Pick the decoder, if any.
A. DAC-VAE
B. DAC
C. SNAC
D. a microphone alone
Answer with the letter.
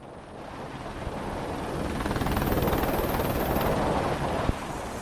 D